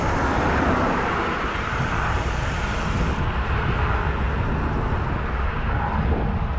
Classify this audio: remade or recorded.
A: recorded